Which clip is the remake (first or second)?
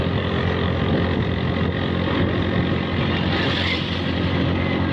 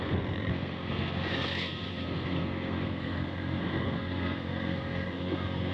second